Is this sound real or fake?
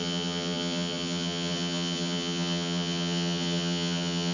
fake